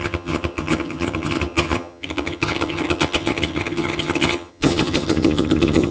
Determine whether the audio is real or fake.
fake